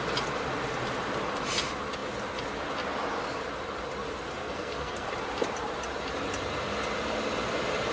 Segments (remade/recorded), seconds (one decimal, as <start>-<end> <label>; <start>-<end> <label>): 0.0-4.4 recorded; 4.4-5.1 remade; 5.1-7.9 recorded